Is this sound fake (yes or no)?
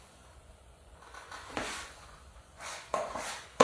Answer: yes